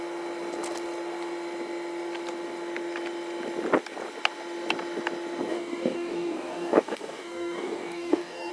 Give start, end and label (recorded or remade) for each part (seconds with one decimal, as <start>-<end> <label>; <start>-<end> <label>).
0.0-5.5 recorded; 5.5-8.5 remade